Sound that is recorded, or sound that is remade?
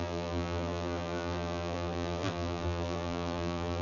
remade